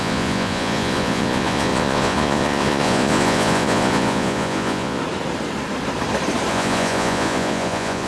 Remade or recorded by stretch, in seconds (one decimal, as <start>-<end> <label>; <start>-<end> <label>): 0.0-5.0 remade; 5.0-6.5 recorded; 6.5-8.1 remade

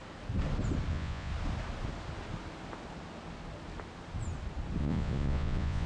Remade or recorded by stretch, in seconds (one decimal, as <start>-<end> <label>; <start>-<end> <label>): 0.0-0.9 recorded; 0.9-1.3 remade; 1.3-4.8 recorded; 4.8-5.9 remade

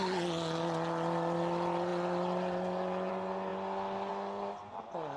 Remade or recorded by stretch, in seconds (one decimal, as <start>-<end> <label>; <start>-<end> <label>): 0.0-5.2 recorded

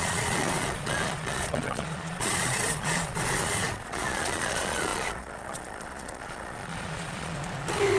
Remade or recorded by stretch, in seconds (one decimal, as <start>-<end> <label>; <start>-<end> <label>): 0.0-7.3 remade; 7.3-8.0 recorded

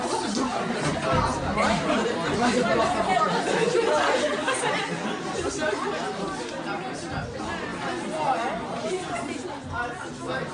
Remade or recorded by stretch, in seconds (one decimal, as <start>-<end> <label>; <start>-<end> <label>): 0.0-10.5 recorded

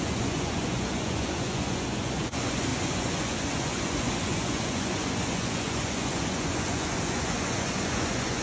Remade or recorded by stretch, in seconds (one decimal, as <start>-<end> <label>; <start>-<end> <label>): 0.0-8.4 remade

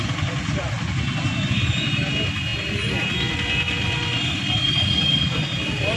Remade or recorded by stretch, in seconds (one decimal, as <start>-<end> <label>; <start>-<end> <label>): 0.0-6.0 recorded